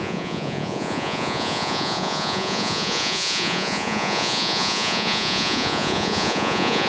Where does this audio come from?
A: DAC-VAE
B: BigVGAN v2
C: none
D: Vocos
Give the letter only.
D